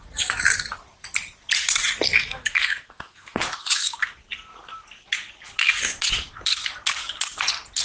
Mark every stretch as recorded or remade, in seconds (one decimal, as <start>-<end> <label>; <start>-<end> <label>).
0.0-2.1 recorded; 2.1-4.0 remade; 4.0-7.8 recorded